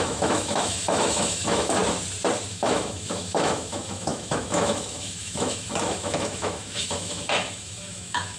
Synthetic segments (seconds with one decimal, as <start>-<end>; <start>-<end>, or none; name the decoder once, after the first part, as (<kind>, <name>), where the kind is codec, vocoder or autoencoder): 0.0-1.8 (autoencoder, DAC-VAE); 2.5-8.4